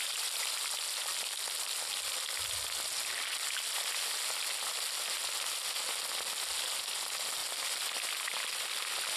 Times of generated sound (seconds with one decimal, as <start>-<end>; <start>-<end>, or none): none